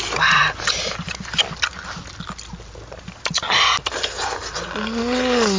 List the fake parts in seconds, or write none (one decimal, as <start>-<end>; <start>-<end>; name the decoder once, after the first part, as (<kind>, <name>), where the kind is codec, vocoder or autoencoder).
none